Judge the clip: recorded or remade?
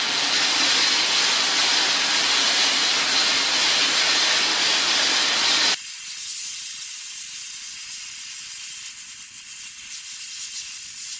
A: recorded